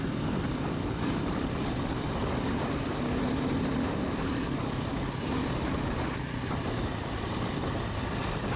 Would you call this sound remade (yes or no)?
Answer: yes